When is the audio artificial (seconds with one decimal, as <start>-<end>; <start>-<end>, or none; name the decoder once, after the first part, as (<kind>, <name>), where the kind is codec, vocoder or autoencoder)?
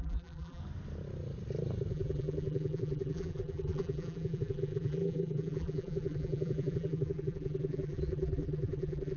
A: 0.0-0.6 (vocoder, BigVGAN v2); 1.9-9.2